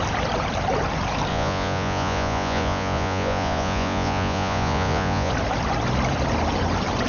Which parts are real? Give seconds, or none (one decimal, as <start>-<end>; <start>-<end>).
0.0-1.3; 5.3-7.1